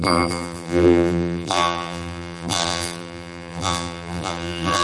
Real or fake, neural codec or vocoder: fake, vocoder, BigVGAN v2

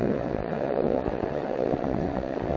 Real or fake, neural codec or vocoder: fake, vocoder, WaveNeXt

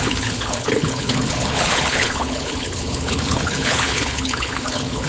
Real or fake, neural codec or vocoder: fake, codec, HILCodec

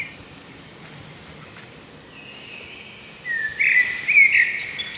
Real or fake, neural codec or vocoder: real